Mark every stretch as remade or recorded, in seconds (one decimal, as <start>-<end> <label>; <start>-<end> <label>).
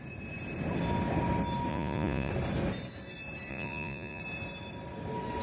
0.0-1.7 recorded; 1.7-2.3 remade; 2.3-3.5 recorded; 3.5-4.2 remade; 4.2-5.4 recorded